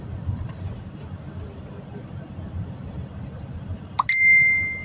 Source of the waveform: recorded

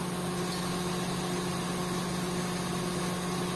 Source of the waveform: recorded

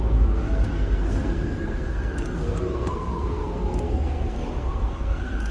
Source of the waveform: remade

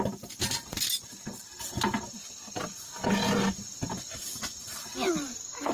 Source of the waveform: recorded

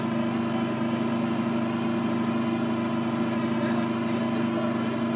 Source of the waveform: recorded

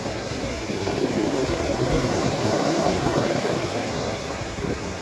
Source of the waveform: remade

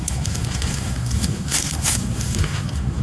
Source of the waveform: remade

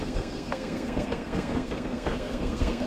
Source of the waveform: remade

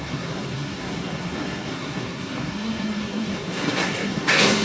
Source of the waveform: remade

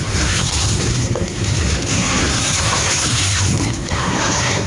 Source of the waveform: remade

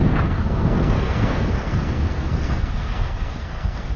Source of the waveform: remade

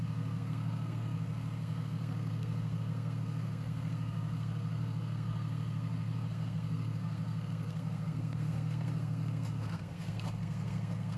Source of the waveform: remade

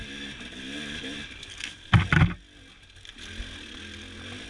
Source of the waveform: recorded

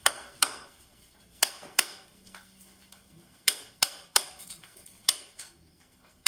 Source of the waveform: remade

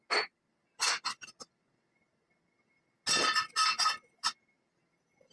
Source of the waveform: recorded